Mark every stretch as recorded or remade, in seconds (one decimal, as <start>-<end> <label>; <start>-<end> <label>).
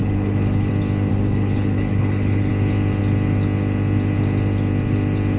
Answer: 0.0-0.7 remade; 0.7-1.1 recorded; 1.1-2.5 remade; 2.5-5.4 recorded